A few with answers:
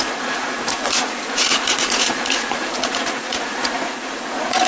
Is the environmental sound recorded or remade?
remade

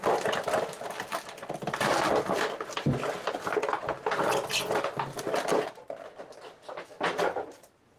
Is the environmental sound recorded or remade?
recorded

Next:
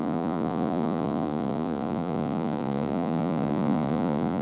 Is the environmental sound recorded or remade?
remade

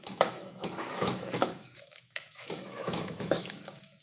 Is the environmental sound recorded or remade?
remade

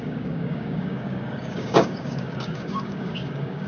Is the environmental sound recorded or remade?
remade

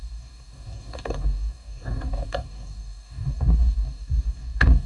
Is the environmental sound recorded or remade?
remade